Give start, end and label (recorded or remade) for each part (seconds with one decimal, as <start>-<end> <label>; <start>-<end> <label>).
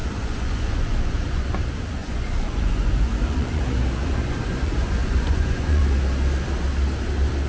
0.0-1.5 remade; 1.5-2.0 recorded; 2.0-3.6 remade; 3.6-4.0 recorded; 4.0-5.8 remade; 5.8-7.5 recorded